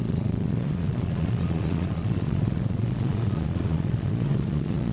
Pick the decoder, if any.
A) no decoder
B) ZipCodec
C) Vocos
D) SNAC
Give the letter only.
C